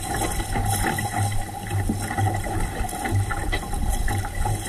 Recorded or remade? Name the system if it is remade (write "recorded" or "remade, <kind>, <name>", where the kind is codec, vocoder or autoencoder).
recorded